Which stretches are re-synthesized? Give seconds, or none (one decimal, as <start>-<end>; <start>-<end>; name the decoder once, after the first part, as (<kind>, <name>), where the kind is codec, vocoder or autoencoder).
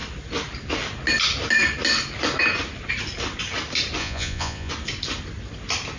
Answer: 4.0-4.7 (vocoder, Vocos)